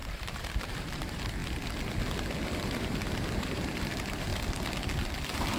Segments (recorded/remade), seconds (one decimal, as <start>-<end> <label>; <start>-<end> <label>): 0.0-1.4 remade; 1.4-2.8 recorded; 2.8-4.3 remade; 4.3-5.0 recorded; 5.0-5.6 remade